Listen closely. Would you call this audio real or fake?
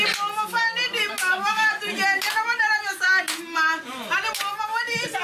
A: real